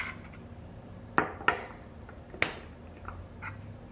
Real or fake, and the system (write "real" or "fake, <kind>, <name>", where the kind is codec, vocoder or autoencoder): real